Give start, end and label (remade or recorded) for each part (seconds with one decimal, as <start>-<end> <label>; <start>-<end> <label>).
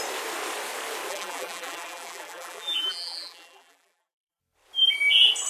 0.0-1.1 recorded; 1.1-4.4 remade; 4.4-5.5 recorded